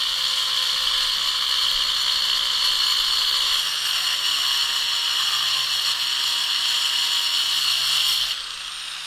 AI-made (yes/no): no